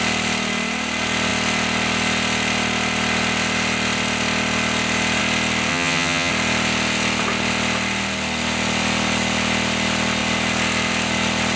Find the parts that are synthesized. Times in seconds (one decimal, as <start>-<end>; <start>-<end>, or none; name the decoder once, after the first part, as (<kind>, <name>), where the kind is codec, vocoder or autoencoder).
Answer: 5.7-6.3 (vocoder, HiFi-GAN)